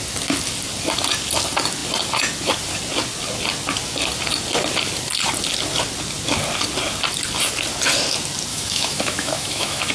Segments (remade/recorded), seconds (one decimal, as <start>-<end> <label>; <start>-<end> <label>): 0.0-8.5 recorded; 8.5-9.9 remade